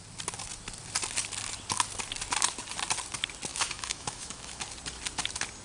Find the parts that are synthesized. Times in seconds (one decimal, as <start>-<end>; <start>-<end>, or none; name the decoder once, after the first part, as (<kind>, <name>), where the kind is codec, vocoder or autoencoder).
3.5-4.6 (autoencoder, DAC-VAE)